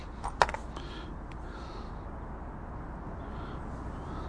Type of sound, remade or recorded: recorded